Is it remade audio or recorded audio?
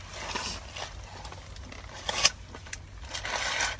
recorded